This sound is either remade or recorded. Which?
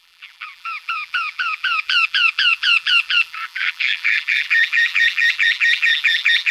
remade